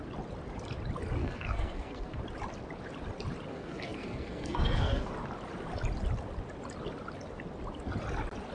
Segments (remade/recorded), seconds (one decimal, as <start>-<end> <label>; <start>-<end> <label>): 0.0-1.2 recorded; 1.2-2.2 remade; 2.2-3.5 recorded; 3.5-5.1 remade; 5.1-8.5 recorded